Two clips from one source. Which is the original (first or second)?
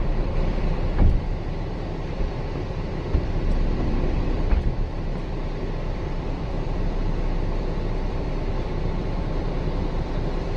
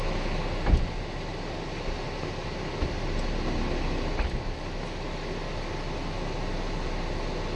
second